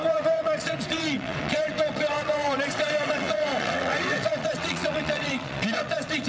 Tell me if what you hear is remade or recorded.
remade